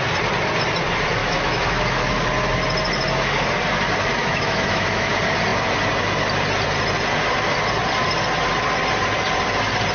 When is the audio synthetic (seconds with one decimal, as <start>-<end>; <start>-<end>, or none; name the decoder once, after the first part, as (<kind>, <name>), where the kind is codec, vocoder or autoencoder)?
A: 1.2-2.1 (autoencoder, DAC-VAE); 4.2-5.1